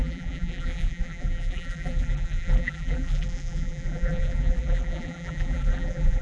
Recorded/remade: remade